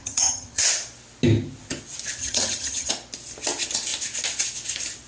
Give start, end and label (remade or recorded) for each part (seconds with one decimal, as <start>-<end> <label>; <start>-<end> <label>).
0.0-0.6 remade; 0.6-2.2 recorded; 2.2-2.9 remade; 2.9-5.1 recorded

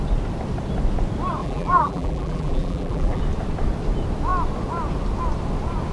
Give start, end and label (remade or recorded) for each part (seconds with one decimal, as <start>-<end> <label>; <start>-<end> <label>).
0.0-1.4 recorded; 1.4-3.2 remade; 3.2-5.9 recorded